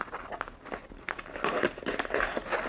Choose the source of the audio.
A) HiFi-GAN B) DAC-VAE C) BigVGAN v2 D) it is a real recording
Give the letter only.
D